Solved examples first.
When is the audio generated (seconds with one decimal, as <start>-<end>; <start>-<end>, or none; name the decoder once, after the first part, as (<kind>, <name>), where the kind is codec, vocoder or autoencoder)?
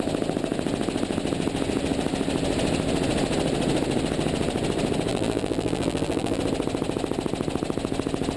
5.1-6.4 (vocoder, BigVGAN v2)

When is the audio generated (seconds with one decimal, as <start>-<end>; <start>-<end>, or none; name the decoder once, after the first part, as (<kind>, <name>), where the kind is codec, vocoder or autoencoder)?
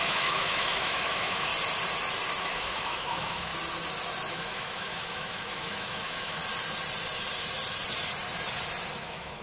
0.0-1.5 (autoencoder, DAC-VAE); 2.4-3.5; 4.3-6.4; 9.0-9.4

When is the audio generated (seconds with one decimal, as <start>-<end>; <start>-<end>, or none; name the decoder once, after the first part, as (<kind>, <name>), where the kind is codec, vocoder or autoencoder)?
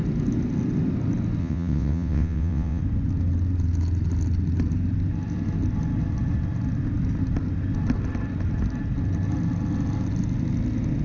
1.4-2.8 (vocoder, WaveNeXt)